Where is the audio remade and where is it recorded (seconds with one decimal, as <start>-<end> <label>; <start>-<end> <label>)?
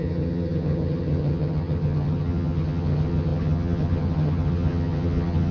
0.0-5.5 remade